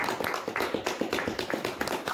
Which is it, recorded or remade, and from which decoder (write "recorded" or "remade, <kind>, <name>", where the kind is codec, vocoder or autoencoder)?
recorded